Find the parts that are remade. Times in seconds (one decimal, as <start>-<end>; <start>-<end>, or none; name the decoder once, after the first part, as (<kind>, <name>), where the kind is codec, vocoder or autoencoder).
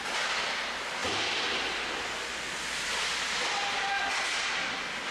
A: none